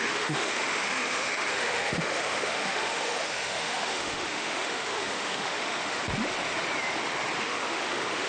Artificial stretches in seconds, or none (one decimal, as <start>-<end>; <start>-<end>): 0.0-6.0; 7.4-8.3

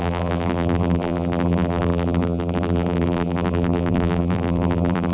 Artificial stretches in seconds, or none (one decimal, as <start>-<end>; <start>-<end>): 0.0-5.1

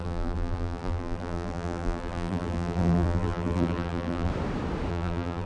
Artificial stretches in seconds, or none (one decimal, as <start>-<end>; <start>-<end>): 0.0-4.3; 4.9-5.5

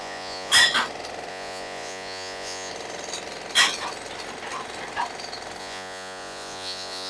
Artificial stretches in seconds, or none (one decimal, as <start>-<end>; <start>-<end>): 0.0-0.5; 1.3-2.7; 5.6-7.1

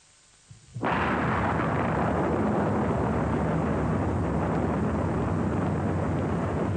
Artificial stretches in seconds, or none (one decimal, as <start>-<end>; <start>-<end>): none

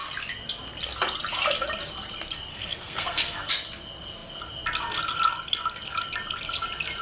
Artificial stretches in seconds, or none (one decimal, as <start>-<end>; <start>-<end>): 2.5-3.5

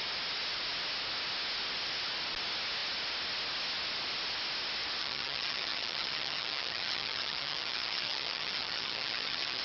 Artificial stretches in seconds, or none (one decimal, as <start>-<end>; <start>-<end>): 5.0-9.6